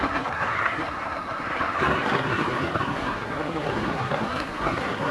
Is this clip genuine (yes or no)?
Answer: no